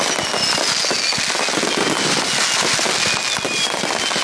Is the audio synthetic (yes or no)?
no